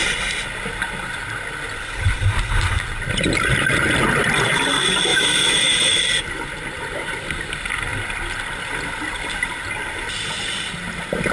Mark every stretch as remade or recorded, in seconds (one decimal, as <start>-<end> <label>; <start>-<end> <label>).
0.0-5.1 recorded; 5.1-6.0 remade; 6.0-11.3 recorded